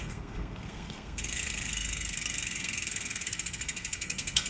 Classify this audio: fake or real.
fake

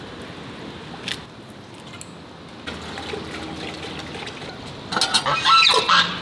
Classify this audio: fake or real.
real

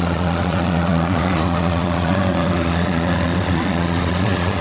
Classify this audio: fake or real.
fake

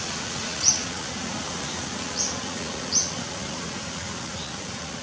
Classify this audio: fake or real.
fake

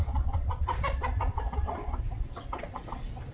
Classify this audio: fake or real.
fake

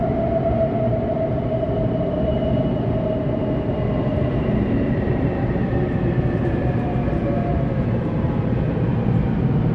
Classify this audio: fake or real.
fake